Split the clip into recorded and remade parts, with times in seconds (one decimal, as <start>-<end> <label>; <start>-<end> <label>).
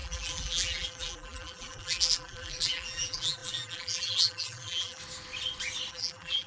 0.0-5.0 remade; 5.0-5.9 recorded; 5.9-6.5 remade